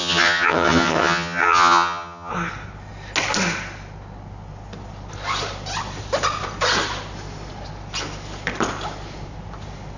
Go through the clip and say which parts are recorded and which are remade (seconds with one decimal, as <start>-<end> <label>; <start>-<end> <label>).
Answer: 0.0-2.3 remade; 2.3-10.0 recorded